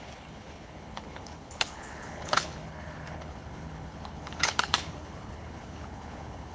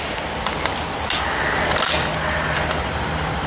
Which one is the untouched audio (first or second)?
second